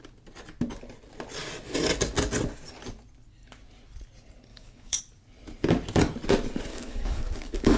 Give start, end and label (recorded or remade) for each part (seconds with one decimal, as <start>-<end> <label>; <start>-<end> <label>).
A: 0.0-4.5 recorded; 4.5-5.0 remade; 5.0-6.7 recorded; 6.7-7.8 remade